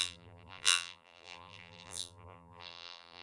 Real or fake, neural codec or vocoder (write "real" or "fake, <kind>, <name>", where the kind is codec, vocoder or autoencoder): fake, vocoder, BigVGAN v2